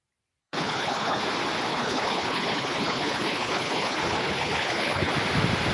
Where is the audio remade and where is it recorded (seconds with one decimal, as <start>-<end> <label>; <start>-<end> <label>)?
0.0-0.4 recorded; 0.4-1.2 remade; 1.2-1.7 recorded; 1.7-5.1 remade; 5.1-5.7 recorded